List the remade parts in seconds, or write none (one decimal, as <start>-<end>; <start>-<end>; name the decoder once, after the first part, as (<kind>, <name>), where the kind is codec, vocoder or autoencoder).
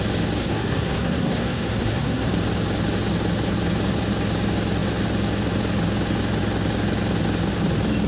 0.4-2.3 (codec, SNAC)